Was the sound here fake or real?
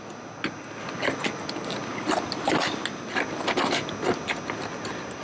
real